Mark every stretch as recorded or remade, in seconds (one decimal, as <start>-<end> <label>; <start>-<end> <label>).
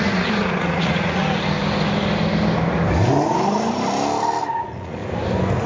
0.0-1.2 remade; 1.2-4.6 recorded; 4.6-5.0 remade; 5.0-5.7 recorded